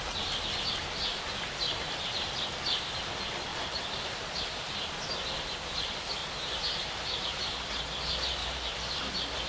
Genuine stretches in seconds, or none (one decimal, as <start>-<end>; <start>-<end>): 0.0-1.1; 2.5-3.5; 5.0-6.2; 7.8-8.4; 9.1-9.5